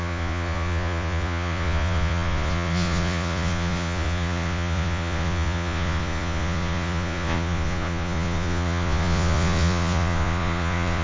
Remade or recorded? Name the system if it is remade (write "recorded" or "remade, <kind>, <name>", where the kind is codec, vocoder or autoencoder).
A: remade, vocoder, Vocos